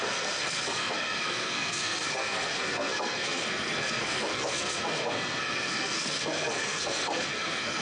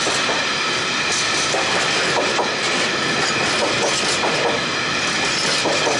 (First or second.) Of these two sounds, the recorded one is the second